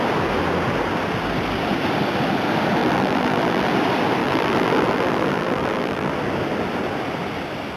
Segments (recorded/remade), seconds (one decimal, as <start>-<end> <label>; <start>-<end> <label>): 0.0-2.8 recorded; 2.8-3.7 remade; 3.7-4.2 recorded; 4.2-6.1 remade; 6.1-7.8 recorded